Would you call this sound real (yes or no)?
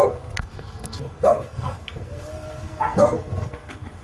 no